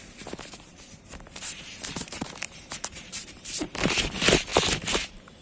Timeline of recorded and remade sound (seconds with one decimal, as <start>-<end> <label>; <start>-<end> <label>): 0.0-4.5 remade; 4.5-5.4 recorded